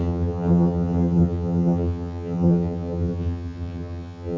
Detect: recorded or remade remade